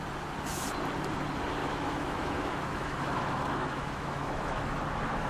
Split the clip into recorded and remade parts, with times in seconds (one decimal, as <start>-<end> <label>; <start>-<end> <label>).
0.0-1.6 recorded; 1.6-4.8 remade; 4.8-5.3 recorded